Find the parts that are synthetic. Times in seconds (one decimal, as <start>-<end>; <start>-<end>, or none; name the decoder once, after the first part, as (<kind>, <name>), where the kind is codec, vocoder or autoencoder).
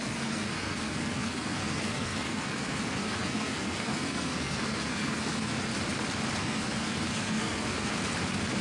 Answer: 0.0-5.7 (codec, SNAC); 6.4-7.9